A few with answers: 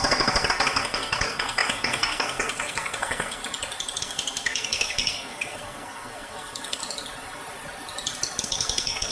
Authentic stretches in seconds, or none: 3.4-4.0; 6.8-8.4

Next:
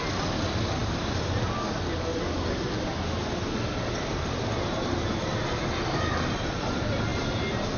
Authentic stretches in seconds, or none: 0.0-7.8

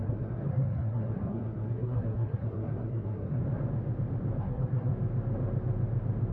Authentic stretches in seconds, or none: 3.4-4.4; 4.9-6.3

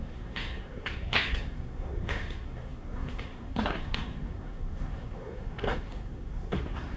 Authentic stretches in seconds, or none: none

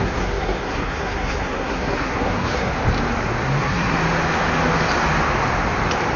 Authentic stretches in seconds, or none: 2.7-3.6; 4.0-6.2